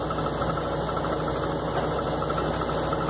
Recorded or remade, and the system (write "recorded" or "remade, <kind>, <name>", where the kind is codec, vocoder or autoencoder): recorded